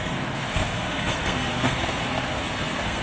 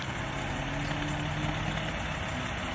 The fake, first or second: first